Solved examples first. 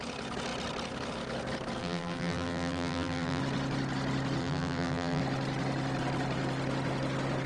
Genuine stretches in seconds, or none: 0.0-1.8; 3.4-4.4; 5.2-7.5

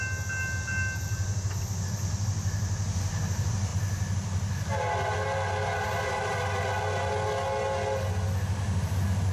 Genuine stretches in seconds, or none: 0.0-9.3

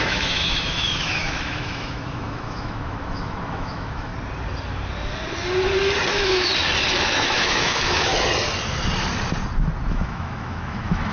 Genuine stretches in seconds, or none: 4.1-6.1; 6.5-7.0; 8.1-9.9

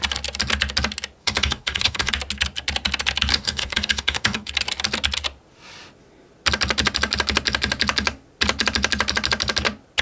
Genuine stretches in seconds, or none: 0.0-1.2; 2.1-3.3; 4.5-10.0

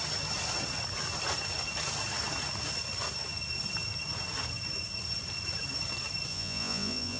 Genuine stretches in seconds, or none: 0.0-6.3